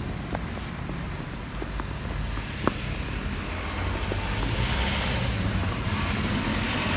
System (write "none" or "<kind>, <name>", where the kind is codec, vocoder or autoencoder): none